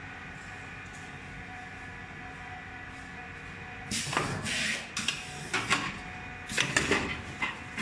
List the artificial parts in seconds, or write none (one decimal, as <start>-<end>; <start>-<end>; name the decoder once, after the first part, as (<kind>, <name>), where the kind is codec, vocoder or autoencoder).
4.3-4.9 (codec, SNAC)